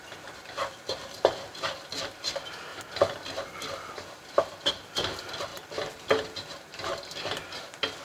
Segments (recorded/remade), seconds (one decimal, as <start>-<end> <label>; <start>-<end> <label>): 0.0-8.0 recorded